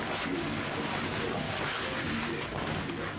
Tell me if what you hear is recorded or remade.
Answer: recorded